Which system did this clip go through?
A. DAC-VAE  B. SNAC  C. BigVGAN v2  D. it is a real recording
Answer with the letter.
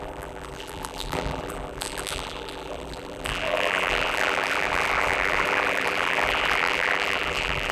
C